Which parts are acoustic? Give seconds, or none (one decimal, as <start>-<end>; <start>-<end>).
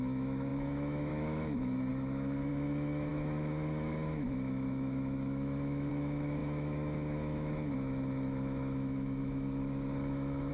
none